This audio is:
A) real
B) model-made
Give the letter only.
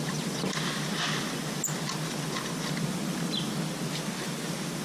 A